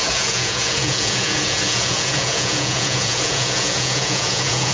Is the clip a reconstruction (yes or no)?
yes